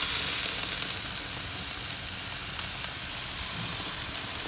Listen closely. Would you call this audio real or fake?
real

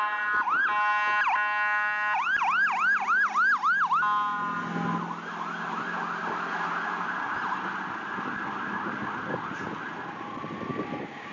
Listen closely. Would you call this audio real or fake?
real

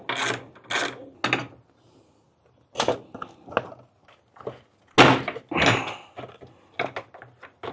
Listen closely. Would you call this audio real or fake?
real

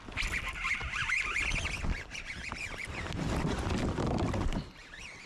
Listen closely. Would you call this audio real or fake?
real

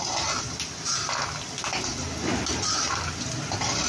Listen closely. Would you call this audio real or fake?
real